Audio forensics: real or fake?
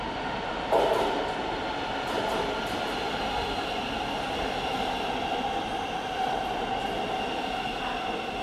real